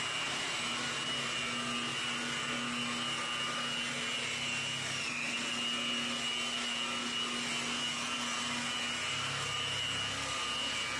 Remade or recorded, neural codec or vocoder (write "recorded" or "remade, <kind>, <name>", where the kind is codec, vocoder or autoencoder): recorded